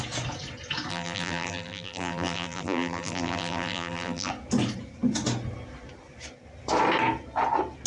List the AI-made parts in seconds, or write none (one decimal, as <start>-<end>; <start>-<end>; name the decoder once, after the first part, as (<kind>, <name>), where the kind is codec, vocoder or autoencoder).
0.9-4.3 (vocoder, BigVGAN v2)